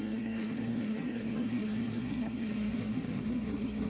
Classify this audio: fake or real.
fake